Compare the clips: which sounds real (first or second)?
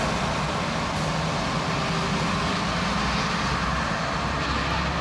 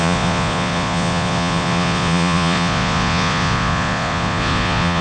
first